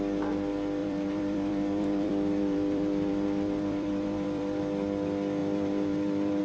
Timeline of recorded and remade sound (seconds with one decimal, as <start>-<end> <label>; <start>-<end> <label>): 0.0-0.8 recorded; 0.8-4.6 remade; 4.6-5.4 recorded; 5.4-6.4 remade